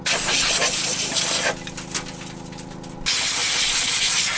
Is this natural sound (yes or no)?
yes